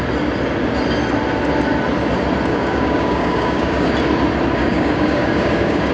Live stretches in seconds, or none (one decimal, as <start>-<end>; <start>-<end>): 0.0-2.5; 3.9-4.6